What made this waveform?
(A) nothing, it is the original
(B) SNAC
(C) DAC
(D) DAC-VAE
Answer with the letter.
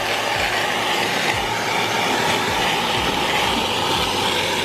A